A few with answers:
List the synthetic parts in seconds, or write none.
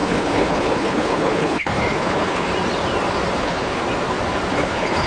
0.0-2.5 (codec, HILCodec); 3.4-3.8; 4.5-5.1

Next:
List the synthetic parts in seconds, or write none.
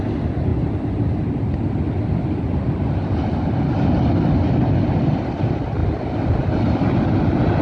5.8-6.5 (vocoder, BigVGAN v2)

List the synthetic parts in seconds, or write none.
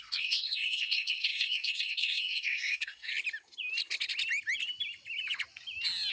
0.0-3.1 (codec, SNAC)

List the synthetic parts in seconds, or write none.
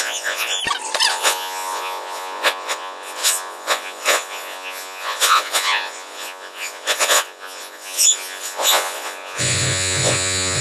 0.0-0.6 (vocoder, Vocos); 1.1-10.6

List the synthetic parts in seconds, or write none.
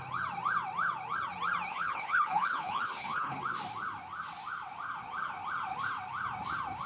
1.7-3.4 (codec, HILCodec)